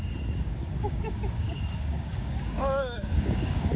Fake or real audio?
fake